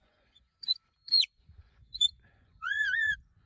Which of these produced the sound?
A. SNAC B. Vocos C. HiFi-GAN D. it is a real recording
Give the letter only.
B